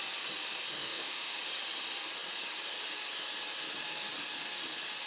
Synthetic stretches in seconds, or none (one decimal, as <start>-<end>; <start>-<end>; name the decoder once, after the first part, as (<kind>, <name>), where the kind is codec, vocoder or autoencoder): 0.8-1.4 (autoencoder, DAC-VAE)